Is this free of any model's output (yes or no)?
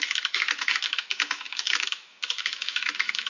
no